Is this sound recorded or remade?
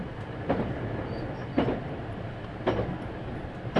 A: recorded